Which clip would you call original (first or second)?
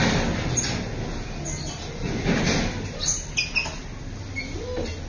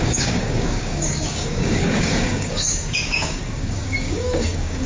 first